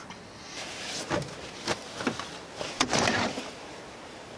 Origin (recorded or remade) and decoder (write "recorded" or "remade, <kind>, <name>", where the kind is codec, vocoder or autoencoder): recorded